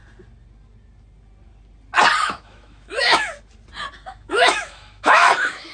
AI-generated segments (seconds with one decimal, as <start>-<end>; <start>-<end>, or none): 2.2-3.3; 3.9-5.7